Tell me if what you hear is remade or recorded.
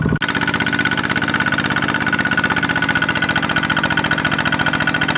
recorded